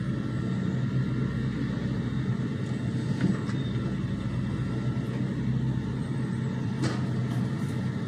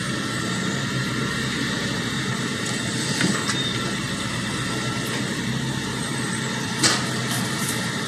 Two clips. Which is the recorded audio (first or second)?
first